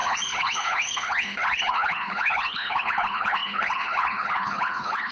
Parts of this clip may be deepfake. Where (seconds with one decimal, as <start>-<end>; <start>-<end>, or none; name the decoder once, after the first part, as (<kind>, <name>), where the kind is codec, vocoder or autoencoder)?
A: 0.0-5.1 (codec, HILCodec)

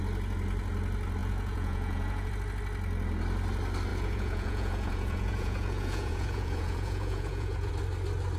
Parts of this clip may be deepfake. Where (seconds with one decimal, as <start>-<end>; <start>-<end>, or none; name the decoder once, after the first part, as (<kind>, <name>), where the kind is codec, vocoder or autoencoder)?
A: 1.2-2.3 (vocoder, Vocos); 3.9-7.7

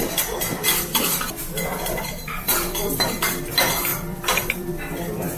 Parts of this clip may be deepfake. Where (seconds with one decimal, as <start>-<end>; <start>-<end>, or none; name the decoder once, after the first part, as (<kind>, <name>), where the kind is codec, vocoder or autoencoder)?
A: 1.7-3.2 (vocoder, BigVGAN v2); 3.9-4.5

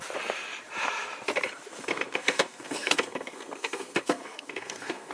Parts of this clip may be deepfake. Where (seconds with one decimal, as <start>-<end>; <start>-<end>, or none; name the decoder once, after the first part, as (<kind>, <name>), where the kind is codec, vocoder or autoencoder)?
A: 1.7-5.1 (codec, SNAC)

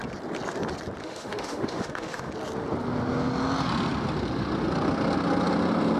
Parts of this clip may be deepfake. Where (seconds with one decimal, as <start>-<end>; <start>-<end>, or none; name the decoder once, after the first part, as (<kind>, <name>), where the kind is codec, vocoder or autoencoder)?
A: 1.0-2.3 (autoencoder, DAC-VAE)

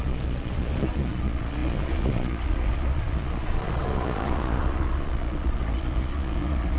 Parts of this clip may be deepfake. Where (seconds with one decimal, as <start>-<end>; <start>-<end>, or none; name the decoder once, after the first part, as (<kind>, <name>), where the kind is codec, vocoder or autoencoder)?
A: 0.0-6.8 (vocoder, Vocos)